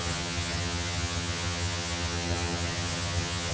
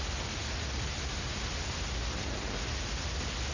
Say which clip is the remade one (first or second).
first